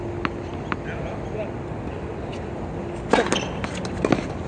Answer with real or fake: real